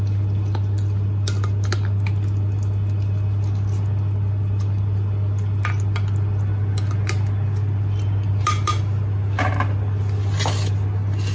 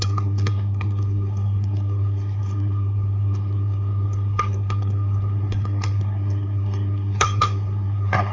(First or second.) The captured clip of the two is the first